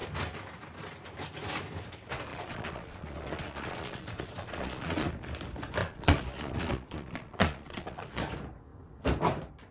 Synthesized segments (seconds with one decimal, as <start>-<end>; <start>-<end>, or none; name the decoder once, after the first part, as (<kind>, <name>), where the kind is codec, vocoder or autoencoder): 2.3-5.1 (vocoder, Vocos); 5.8-8.2